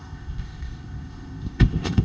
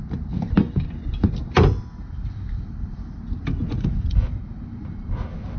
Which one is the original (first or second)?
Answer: second